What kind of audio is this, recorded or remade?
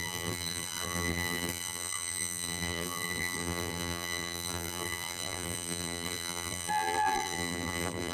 remade